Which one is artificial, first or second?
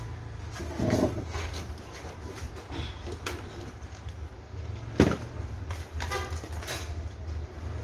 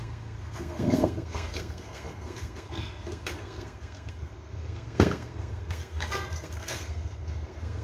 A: second